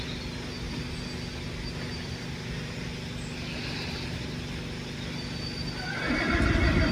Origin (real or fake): real